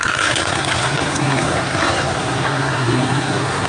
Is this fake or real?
fake